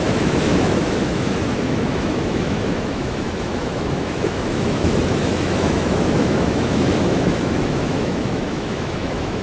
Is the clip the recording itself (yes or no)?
no